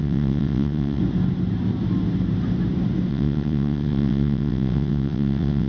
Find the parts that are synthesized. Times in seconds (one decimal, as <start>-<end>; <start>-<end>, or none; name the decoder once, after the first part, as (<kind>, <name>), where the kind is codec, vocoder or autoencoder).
0.0-1.0 (vocoder, WaveNeXt); 3.1-5.7